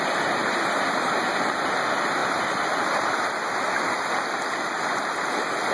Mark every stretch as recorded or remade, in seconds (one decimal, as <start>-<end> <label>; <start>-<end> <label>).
0.0-0.4 recorded; 0.4-1.6 remade; 1.6-2.2 recorded; 2.2-3.2 remade; 3.2-5.7 recorded